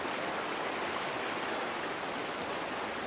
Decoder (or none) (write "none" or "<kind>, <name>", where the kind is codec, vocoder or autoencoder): none